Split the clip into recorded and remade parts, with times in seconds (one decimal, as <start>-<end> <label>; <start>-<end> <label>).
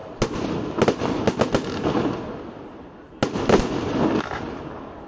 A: 0.0-5.1 recorded